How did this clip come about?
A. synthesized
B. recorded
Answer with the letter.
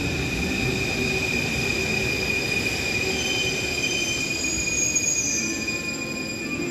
B